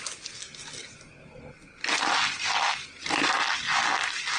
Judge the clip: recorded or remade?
recorded